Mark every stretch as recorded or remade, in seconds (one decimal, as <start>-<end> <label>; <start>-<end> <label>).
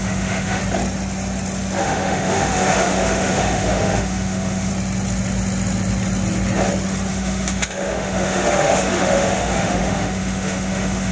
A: 0.0-0.6 remade; 0.6-1.8 recorded; 1.8-4.7 remade; 4.7-7.1 recorded; 7.1-11.1 remade